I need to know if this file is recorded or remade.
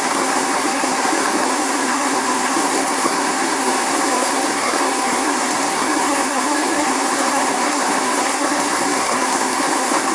remade